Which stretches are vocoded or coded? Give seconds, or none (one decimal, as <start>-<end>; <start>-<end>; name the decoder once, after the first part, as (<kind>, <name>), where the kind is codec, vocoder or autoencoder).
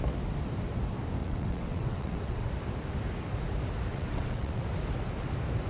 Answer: 1.2-2.5 (vocoder, WaveNeXt); 3.9-4.6